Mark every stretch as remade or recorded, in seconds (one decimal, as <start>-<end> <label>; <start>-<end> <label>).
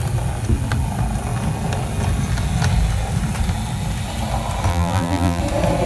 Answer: 0.0-4.7 recorded; 4.7-5.4 remade; 5.4-5.9 recorded